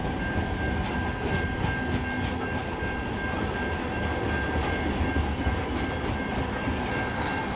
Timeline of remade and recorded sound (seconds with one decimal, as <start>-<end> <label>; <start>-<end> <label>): 0.0-7.6 recorded